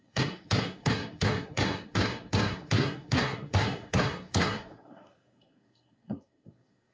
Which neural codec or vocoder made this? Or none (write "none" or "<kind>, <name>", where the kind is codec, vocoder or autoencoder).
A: codec, SNAC